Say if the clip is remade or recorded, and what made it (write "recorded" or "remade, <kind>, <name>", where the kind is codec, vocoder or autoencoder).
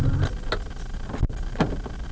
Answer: recorded